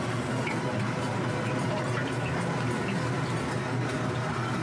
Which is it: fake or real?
real